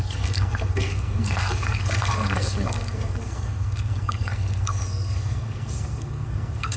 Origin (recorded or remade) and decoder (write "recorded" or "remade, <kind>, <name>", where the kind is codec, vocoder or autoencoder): remade, codec, SNAC